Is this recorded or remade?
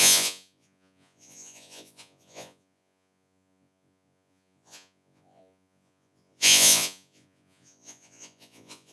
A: remade